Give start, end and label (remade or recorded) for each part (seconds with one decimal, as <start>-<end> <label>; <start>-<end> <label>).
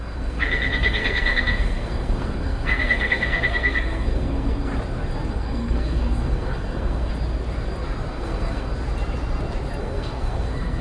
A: 0.0-4.7 remade; 4.7-5.3 recorded; 5.3-7.1 remade; 7.1-8.1 recorded; 8.1-8.7 remade; 8.7-9.8 recorded; 9.8-10.8 remade